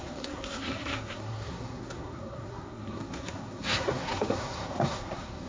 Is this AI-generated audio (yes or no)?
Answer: yes